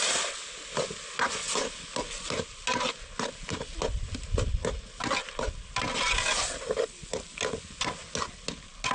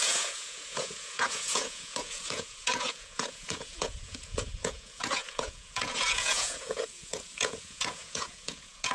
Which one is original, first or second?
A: first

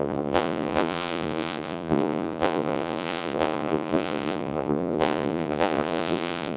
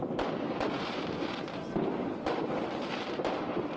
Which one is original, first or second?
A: second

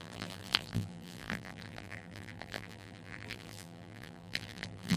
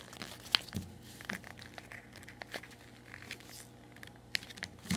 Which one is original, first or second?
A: second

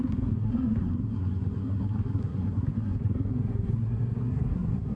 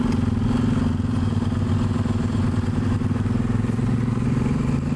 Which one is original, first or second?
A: second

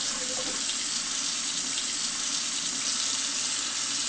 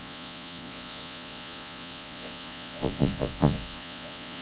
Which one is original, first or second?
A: first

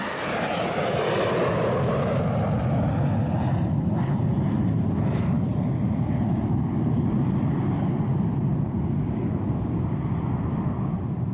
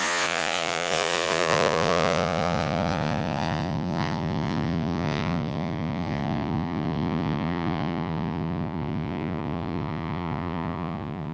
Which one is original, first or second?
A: first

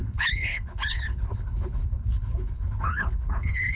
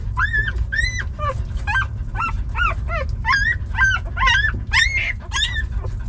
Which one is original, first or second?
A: second